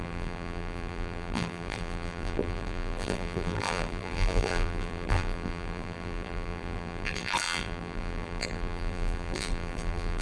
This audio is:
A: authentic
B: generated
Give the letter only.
B